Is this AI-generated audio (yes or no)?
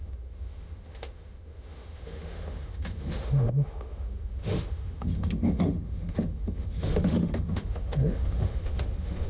yes